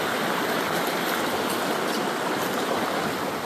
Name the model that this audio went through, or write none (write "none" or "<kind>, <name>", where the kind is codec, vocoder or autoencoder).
none